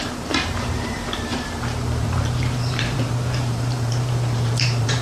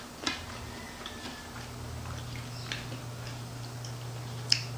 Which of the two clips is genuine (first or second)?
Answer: second